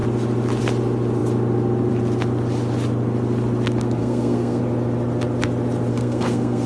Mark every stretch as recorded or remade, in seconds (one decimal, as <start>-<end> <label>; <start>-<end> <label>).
0.0-4.0 recorded; 4.0-4.6 remade; 4.6-5.9 recorded; 5.9-6.7 remade